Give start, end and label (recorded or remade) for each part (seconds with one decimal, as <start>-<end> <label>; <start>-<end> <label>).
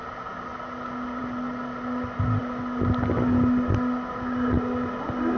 0.0-5.4 recorded